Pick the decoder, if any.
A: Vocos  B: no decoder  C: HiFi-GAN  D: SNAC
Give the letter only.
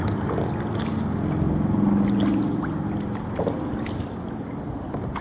B